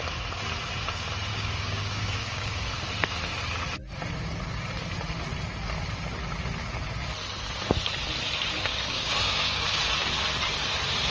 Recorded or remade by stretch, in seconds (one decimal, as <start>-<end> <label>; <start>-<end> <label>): 0.0-1.3 recorded; 1.3-2.7 remade; 2.7-8.7 recorded; 8.7-9.8 remade; 9.8-11.1 recorded